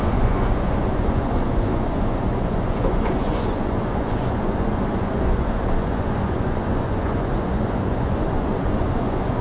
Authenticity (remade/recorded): remade